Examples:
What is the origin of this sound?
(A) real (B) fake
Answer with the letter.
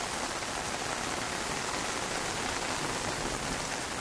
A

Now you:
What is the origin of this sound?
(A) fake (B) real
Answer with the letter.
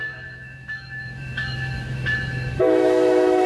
A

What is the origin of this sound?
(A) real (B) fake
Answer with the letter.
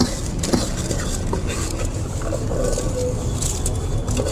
A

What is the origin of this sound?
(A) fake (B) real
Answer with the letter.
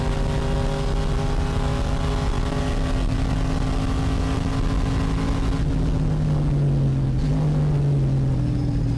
B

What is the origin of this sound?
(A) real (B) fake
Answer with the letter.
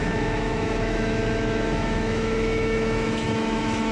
B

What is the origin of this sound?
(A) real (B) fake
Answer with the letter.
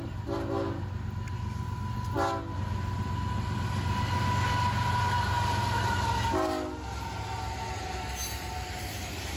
A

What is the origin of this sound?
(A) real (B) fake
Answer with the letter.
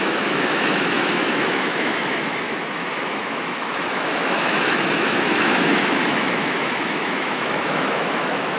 B